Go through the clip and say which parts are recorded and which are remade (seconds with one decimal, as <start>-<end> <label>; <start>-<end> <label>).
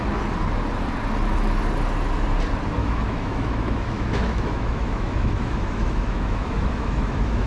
0.0-2.8 recorded; 2.8-7.5 remade